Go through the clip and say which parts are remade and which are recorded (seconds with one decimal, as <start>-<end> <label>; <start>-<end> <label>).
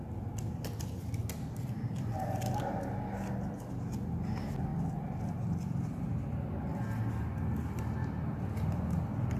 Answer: 0.0-9.4 recorded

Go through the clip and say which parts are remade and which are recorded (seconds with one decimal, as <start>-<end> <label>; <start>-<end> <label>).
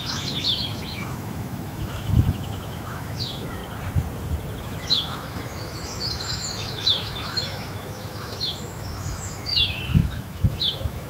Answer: 0.0-3.6 remade; 3.6-4.6 recorded; 4.6-11.1 remade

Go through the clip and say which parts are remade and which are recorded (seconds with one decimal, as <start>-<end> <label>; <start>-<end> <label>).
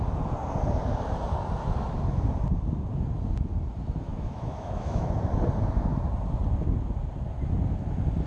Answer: 0.0-4.1 recorded; 4.1-5.2 remade; 5.2-8.3 recorded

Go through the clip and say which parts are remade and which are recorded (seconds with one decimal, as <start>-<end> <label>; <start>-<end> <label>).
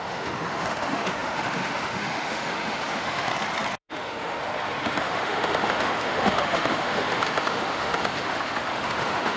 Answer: 0.0-3.3 remade; 3.3-3.8 recorded; 3.8-4.4 remade; 4.4-5.0 recorded; 5.0-9.4 remade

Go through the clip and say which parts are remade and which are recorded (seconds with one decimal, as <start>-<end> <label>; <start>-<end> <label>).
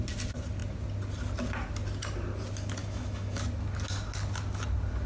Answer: 0.0-2.8 recorded; 2.8-3.4 remade; 3.4-5.1 recorded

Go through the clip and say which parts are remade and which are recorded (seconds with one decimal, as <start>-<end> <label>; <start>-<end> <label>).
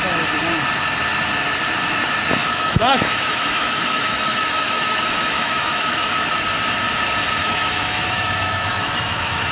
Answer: 0.0-2.4 recorded; 2.4-6.3 remade; 6.3-7.4 recorded; 7.4-9.5 remade